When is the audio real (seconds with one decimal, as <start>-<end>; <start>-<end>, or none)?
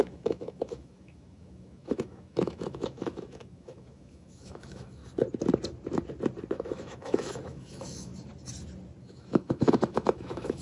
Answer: 5.0-6.5; 8.1-9.0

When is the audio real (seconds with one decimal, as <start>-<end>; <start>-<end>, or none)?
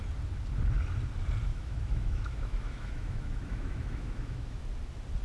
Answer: 0.0-1.5; 4.6-5.2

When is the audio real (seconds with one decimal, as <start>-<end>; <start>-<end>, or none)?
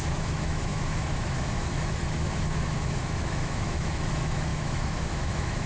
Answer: none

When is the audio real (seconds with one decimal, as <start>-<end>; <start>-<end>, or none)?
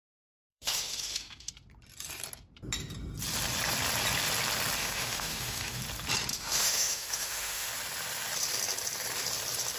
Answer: 0.0-0.5; 1.5-4.8; 5.8-6.3; 7.7-9.8